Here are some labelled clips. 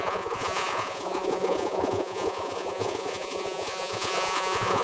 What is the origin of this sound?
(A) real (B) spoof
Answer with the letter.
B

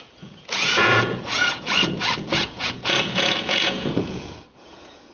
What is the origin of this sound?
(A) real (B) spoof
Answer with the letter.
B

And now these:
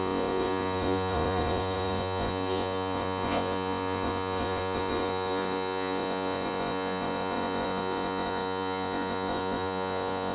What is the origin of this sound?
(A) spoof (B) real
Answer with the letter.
A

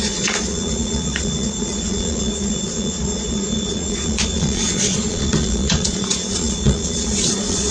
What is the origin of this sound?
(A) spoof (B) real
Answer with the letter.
A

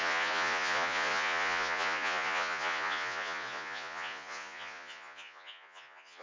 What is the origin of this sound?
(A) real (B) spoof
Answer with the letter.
B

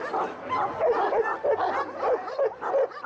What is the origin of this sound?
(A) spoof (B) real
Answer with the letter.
B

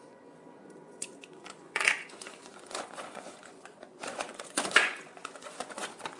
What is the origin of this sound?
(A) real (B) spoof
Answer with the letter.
B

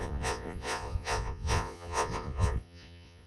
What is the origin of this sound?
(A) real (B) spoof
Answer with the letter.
B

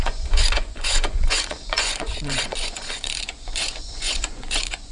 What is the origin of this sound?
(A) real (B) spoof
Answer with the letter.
B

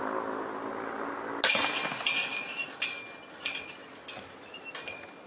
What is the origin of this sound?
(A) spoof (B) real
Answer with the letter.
B